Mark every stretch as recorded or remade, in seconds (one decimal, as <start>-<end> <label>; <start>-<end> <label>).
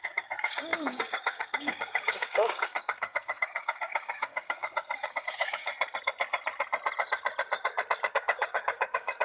0.0-5.7 remade; 5.7-8.1 recorded; 8.1-9.2 remade